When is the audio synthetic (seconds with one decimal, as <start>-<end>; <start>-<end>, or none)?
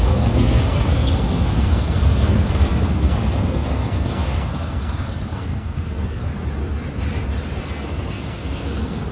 0.0-6.3; 7.6-9.1